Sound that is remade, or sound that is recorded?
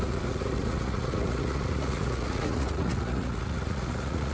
remade